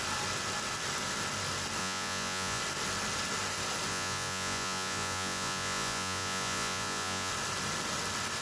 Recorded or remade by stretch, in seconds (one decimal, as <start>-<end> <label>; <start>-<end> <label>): 0.0-1.8 recorded; 1.8-2.6 remade; 2.6-3.9 recorded; 3.9-7.3 remade; 7.3-8.4 recorded